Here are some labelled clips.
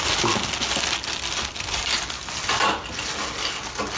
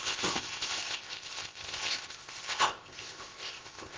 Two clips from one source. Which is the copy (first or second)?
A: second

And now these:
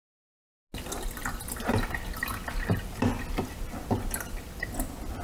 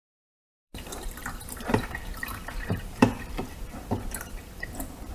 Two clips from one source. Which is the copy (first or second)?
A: second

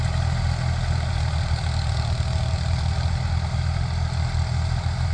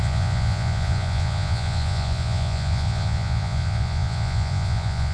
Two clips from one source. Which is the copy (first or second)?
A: second